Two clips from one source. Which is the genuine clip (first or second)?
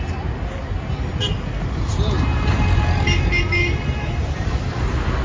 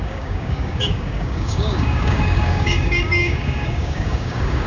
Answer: first